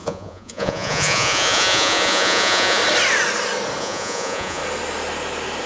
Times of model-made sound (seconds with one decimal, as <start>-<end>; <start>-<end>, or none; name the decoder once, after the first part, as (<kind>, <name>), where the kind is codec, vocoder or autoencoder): 0.0-2.8 (vocoder, Vocos); 3.8-4.6